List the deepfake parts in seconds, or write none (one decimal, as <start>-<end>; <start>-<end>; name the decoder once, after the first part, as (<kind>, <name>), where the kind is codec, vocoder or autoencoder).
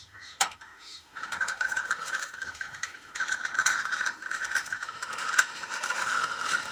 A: 0.0-6.7 (autoencoder, DAC-VAE)